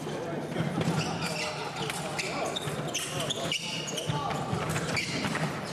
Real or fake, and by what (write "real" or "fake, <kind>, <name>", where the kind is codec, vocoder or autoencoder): real